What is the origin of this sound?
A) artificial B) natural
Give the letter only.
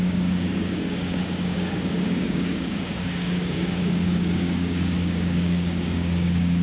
A